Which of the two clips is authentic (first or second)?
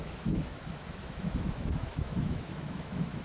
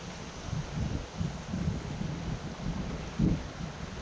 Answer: second